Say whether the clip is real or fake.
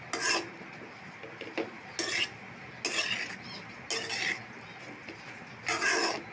real